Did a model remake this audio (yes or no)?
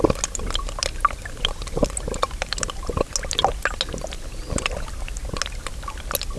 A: no